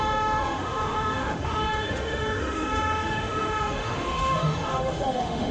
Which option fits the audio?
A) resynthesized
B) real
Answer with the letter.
A